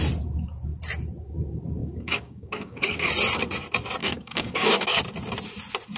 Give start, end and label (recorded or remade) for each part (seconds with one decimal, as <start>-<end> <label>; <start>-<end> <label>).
0.0-1.8 recorded; 1.8-3.1 remade; 3.1-4.0 recorded; 4.0-5.0 remade; 5.0-6.0 recorded